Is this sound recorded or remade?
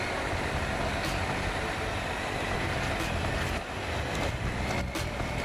recorded